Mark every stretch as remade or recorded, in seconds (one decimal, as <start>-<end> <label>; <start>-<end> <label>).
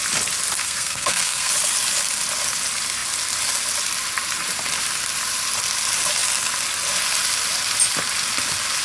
0.0-0.6 recorded; 0.6-1.5 remade; 1.5-8.8 recorded